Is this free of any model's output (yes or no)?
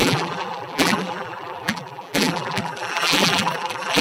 no